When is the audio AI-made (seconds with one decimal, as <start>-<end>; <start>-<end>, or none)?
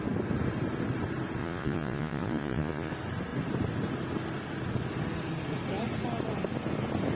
1.4-2.9